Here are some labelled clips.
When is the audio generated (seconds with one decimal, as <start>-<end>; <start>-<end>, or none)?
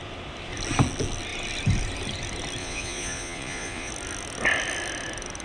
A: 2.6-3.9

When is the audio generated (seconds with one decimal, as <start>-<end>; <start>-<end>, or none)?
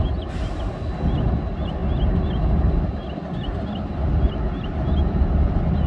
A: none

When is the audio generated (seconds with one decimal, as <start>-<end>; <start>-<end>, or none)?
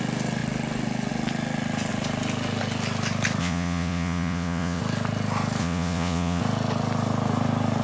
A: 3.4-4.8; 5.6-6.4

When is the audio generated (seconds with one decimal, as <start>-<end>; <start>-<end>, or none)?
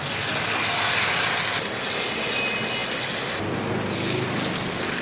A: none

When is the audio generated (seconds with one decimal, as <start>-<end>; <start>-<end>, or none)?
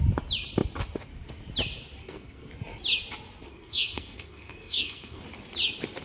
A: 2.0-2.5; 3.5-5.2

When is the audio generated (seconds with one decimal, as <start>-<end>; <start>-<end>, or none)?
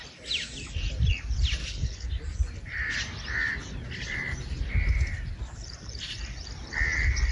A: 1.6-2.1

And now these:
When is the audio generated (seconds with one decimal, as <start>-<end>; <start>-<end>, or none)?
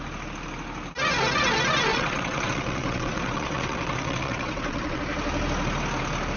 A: 1.9-5.0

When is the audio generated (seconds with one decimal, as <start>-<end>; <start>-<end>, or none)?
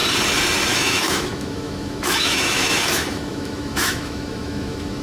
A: 0.7-5.0